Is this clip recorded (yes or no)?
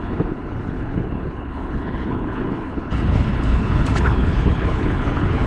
no